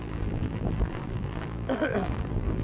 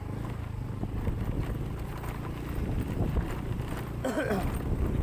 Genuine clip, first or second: second